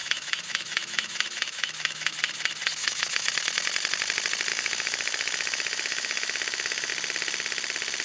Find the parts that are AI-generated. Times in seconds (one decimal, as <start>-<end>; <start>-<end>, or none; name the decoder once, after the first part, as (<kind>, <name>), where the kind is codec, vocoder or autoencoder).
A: 0.0-2.1 (autoencoder, DAC-VAE); 2.8-3.3; 4.5-6.9